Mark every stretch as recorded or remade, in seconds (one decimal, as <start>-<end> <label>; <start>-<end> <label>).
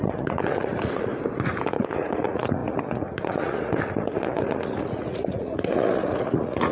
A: 0.0-1.1 remade; 1.1-1.7 recorded; 1.7-6.7 remade